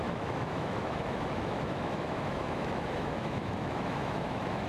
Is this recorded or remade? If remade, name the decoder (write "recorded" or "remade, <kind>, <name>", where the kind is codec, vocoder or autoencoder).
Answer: remade, autoencoder, DAC-VAE